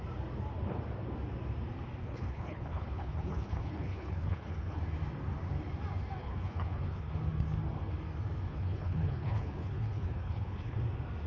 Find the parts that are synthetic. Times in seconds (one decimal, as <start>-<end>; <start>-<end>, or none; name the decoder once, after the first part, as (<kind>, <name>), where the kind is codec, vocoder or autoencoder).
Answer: 2.0-4.8 (codec, HILCodec); 6.2-7.1; 8.5-10.8